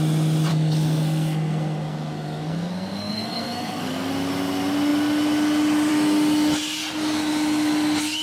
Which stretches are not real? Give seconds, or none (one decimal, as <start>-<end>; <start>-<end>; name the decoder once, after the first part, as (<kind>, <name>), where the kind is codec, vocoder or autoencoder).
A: 0.5-4.1 (codec, SNAC)